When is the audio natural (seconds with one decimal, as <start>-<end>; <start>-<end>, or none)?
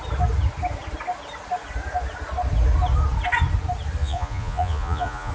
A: 0.0-4.0